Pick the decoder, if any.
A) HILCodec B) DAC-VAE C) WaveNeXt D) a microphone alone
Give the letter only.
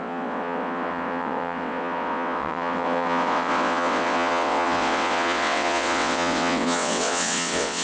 C